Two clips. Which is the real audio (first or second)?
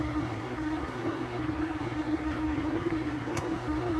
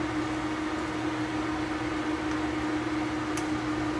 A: second